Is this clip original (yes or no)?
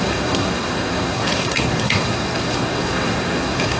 no